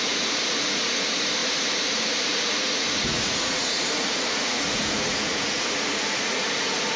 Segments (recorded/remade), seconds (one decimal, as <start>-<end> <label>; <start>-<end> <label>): 0.0-7.0 remade